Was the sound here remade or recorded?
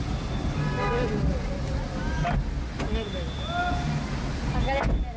recorded